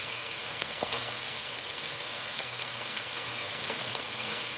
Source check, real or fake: fake